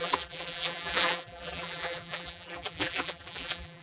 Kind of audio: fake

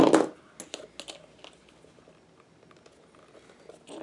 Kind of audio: real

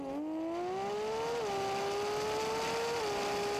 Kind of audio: real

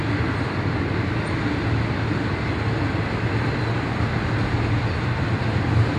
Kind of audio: real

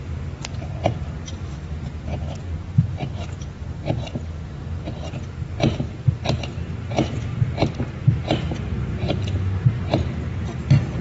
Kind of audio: real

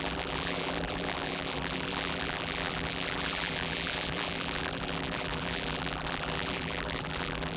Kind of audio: fake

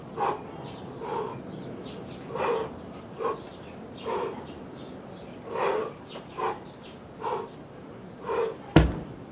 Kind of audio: real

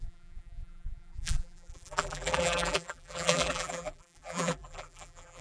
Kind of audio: fake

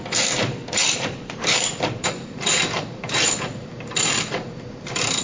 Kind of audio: fake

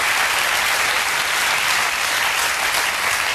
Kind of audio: real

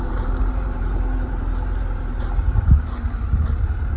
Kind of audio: fake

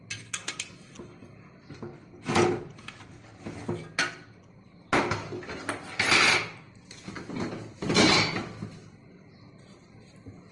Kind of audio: real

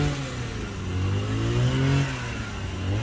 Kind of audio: real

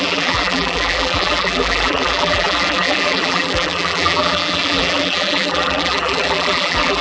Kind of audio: fake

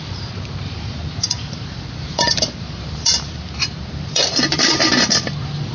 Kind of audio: fake